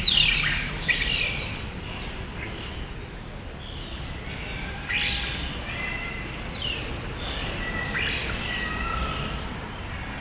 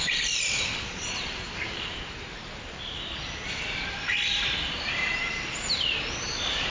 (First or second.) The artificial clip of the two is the second